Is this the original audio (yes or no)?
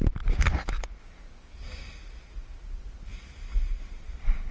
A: yes